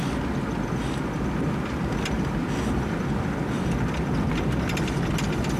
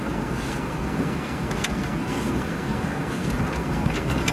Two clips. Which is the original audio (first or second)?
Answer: first